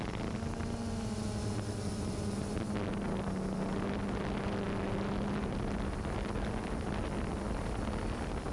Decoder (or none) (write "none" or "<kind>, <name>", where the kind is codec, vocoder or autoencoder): none